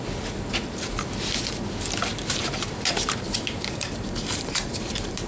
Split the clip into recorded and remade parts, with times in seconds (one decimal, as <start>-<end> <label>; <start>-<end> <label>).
0.0-2.1 recorded; 2.1-5.3 remade